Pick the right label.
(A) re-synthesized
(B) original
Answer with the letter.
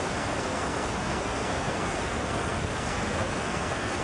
A